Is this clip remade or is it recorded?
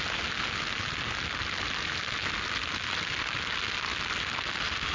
recorded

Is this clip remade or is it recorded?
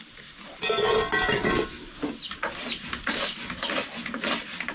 recorded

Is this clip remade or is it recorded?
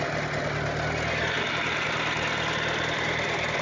recorded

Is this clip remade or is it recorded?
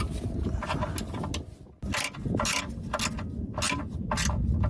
recorded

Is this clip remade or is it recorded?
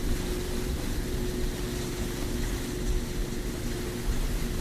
recorded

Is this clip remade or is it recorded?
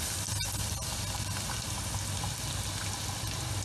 recorded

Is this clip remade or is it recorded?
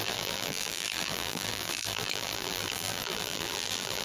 remade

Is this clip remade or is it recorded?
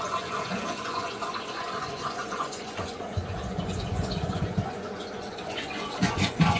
remade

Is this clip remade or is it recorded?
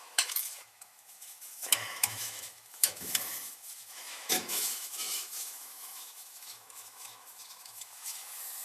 remade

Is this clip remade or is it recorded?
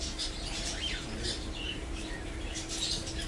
remade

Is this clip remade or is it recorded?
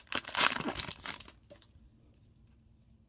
recorded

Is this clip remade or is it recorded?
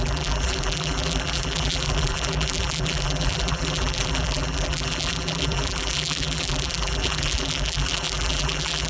remade